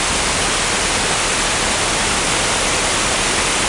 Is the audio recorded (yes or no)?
yes